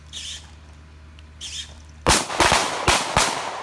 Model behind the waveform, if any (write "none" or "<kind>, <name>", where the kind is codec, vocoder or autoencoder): none